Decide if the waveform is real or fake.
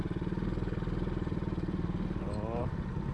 real